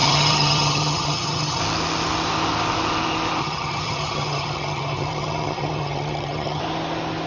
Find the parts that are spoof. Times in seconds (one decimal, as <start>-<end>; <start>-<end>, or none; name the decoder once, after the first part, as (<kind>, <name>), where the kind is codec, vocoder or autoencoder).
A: 0.0-1.6 (vocoder, HiFi-GAN); 3.4-6.6